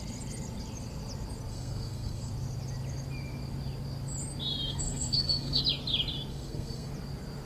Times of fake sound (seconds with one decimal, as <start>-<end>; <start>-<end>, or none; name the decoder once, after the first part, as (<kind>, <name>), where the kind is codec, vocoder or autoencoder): 1.5-2.3 (codec, SNAC); 4.7-5.6; 6.3-6.9